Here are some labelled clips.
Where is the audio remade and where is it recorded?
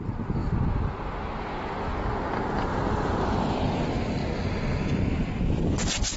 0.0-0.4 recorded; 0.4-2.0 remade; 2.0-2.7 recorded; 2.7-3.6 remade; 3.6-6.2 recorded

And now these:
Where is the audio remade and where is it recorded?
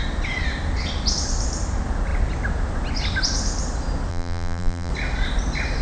0.0-4.1 recorded; 4.1-4.9 remade; 4.9-5.8 recorded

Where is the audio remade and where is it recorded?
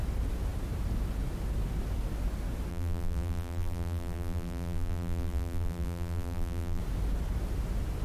0.0-2.7 recorded; 2.7-6.8 remade; 6.8-8.0 recorded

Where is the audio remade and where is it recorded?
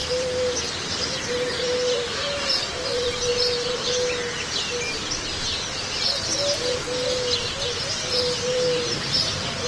0.0-3.3 remade; 3.3-8.0 recorded; 8.0-9.7 remade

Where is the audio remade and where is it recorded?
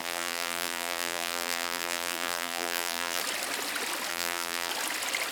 0.0-3.2 remade; 3.2-4.1 recorded; 4.1-4.7 remade; 4.7-5.3 recorded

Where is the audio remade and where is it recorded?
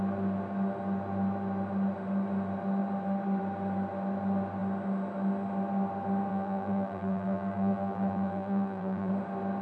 0.0-6.3 recorded; 6.3-9.1 remade; 9.1-9.6 recorded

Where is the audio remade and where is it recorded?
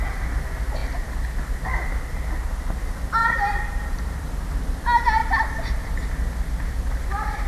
0.0-3.2 recorded; 3.2-4.5 remade; 4.5-5.2 recorded; 5.2-6.1 remade; 6.1-7.5 recorded